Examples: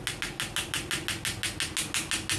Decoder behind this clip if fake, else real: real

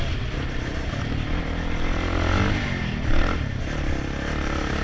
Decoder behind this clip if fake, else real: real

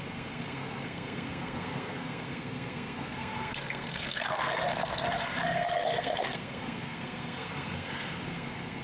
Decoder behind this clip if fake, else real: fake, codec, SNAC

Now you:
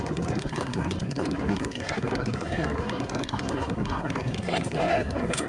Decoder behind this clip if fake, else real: fake, codec, SNAC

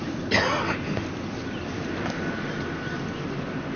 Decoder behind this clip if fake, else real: real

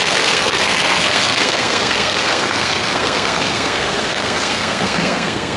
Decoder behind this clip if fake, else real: fake, codec, SNAC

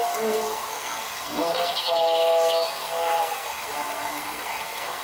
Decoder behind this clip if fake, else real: fake, codec, SNAC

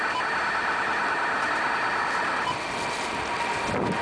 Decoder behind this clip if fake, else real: real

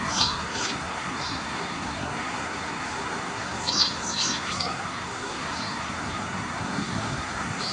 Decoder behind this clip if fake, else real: fake, codec, SNAC